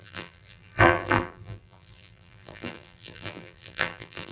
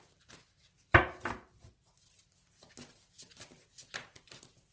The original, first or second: second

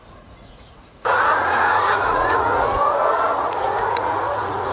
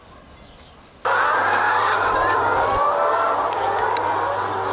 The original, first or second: second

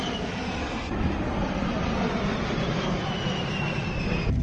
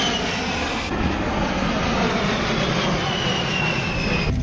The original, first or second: second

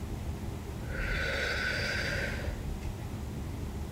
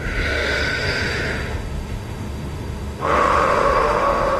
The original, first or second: first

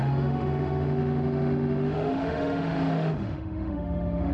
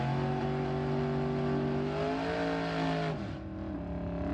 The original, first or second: second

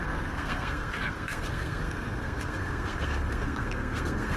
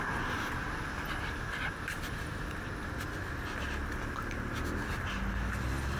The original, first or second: second